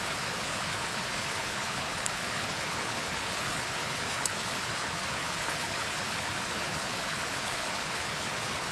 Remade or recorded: remade